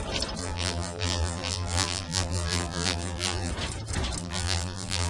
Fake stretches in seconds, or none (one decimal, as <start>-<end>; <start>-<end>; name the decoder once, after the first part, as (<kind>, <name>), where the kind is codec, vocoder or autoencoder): 0.4-3.5 (vocoder, BigVGAN v2); 4.2-5.1